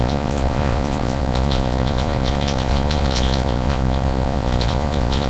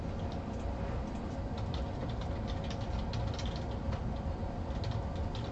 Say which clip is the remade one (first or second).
first